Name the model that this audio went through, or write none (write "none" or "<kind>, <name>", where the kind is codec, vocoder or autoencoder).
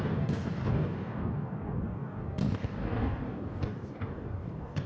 codec, DAC